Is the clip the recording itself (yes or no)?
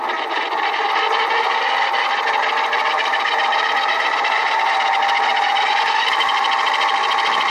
yes